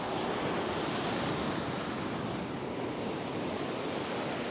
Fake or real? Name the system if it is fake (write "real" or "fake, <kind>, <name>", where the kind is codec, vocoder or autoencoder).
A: real